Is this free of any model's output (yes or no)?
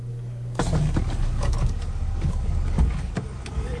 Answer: no